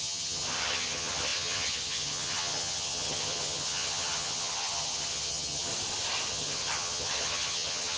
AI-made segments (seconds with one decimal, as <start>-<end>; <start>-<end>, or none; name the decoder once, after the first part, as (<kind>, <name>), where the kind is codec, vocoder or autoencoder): 0.0-5.7 (vocoder, HiFi-GAN); 6.3-8.0